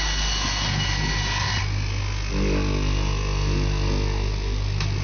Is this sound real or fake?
real